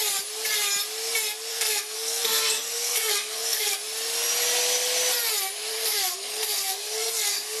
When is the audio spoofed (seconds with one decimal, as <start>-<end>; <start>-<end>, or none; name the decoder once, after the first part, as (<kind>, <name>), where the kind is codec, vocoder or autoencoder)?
1.5-3.8 (codec, SNAC); 5.7-7.6